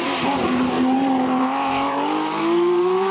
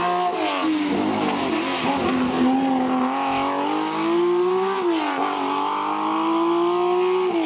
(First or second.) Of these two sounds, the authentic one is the second